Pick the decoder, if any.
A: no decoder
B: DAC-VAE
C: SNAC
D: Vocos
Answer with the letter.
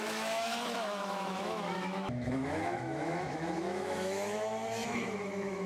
B